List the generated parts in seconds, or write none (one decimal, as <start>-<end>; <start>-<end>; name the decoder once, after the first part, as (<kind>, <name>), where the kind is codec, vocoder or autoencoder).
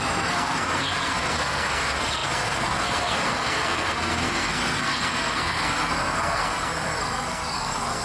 0.0-8.0 (codec, SNAC)